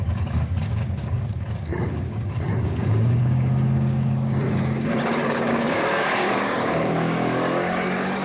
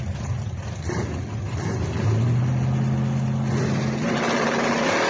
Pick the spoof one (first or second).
first